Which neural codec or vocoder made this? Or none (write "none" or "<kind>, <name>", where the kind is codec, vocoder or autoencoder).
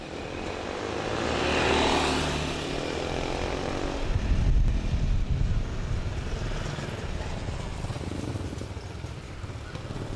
none